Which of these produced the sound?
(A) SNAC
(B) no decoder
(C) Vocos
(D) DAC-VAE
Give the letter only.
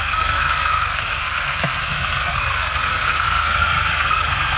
A